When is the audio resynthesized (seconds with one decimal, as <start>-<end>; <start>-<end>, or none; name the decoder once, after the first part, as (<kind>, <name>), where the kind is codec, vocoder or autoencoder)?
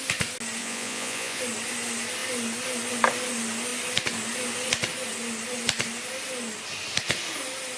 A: 0.6-1.4 (vocoder, Vocos)